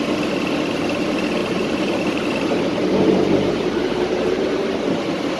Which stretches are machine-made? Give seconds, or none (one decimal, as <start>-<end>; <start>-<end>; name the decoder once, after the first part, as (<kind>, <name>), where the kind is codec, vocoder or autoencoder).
1.4-4.6 (vocoder, BigVGAN v2)